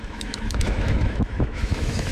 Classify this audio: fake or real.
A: fake